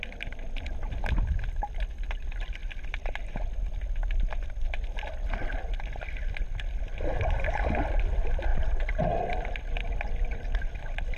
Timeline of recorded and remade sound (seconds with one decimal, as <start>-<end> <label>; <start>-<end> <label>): 0.0-11.2 recorded